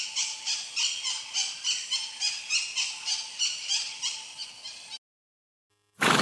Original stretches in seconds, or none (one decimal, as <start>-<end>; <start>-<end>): 0.0-6.2